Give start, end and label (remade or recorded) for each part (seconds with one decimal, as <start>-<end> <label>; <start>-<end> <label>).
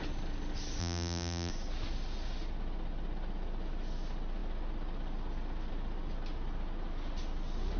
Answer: 0.0-0.8 recorded; 0.8-1.5 remade; 1.5-7.8 recorded